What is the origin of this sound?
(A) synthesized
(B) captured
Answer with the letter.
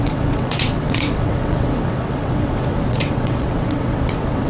A